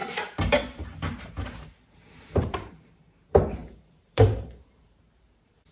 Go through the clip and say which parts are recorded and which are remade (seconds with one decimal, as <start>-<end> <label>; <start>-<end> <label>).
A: 0.0-3.2 remade; 3.2-3.6 recorded; 3.6-5.7 remade